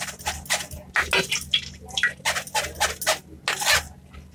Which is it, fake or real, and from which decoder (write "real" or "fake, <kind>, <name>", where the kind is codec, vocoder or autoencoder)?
real